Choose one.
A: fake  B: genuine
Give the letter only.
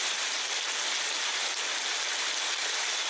B